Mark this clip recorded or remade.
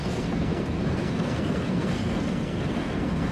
remade